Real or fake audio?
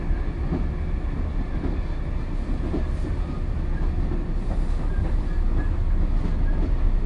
real